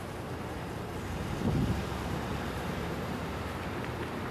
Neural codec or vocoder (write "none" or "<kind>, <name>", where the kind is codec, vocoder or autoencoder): vocoder, BigVGAN v2